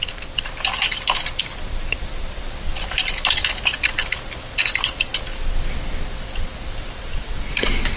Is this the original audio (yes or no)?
yes